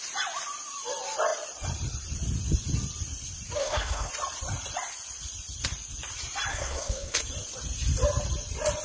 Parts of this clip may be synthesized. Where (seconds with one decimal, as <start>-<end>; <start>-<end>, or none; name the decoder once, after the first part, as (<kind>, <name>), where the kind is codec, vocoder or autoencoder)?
3.6-4.1 (codec, SNAC); 6.5-7.2